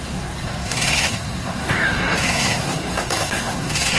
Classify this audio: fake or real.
fake